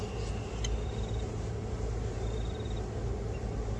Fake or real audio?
real